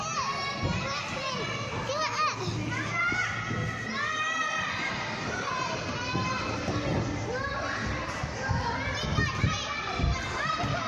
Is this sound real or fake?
real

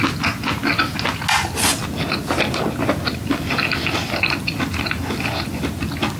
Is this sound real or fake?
real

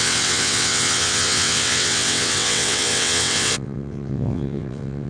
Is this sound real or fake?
fake